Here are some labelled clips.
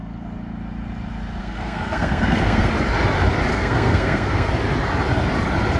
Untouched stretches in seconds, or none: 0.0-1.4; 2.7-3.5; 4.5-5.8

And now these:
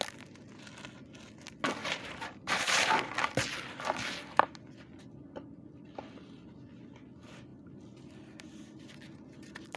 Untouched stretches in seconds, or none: 0.0-1.8; 2.9-9.8

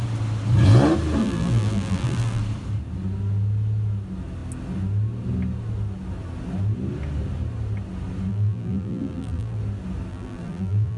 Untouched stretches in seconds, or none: 0.0-1.2; 2.4-8.3; 9.6-10.1

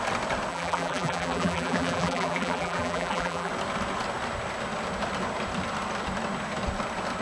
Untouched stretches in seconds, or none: 0.0-0.5; 3.5-7.2